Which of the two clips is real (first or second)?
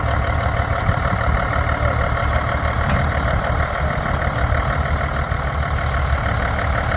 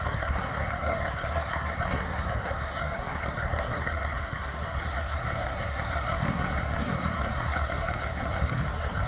first